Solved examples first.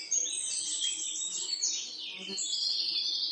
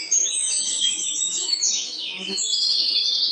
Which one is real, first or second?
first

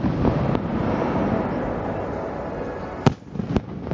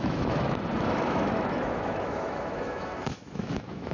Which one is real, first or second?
first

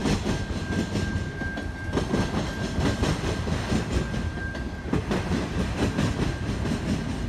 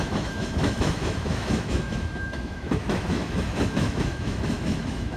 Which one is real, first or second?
first